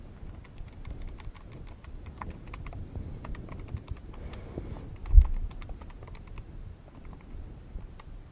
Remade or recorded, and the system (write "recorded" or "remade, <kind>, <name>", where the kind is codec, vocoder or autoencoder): recorded